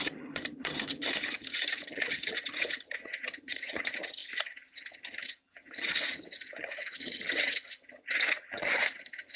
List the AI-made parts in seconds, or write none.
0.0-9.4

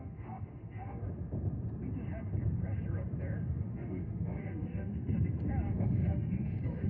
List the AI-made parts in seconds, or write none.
0.0-1.0; 3.5-4.9; 5.7-6.9